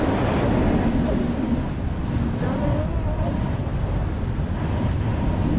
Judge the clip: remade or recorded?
recorded